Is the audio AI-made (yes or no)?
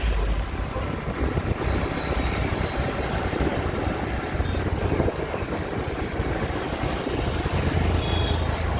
no